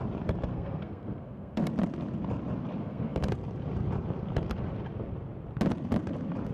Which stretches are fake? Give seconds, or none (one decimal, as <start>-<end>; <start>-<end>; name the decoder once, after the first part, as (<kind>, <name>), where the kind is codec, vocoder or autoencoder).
0.5-1.7 (codec, SNAC); 2.8-3.3